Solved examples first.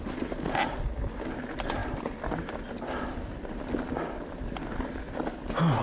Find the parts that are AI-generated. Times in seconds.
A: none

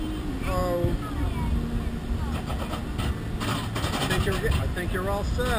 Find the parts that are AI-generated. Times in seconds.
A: none

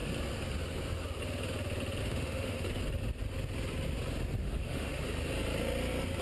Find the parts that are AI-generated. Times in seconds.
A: 2.0-2.8 (autoencoder, DAC-VAE); 4.4-5.0